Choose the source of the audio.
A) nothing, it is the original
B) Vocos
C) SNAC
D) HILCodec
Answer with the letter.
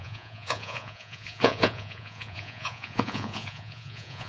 B